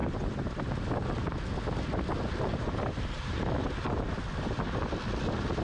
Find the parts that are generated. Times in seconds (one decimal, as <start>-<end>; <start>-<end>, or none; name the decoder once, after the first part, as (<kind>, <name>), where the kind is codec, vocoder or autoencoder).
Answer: 0.0-0.6 (vocoder, BigVGAN v2); 2.5-3.4